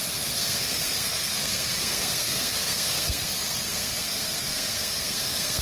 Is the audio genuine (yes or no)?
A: no